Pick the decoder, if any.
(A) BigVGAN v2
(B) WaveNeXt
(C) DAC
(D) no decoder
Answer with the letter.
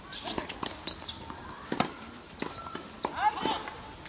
D